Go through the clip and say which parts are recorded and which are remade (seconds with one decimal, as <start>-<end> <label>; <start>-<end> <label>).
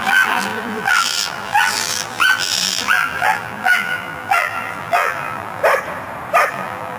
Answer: 0.0-5.6 remade; 5.6-6.5 recorded; 6.5-7.0 remade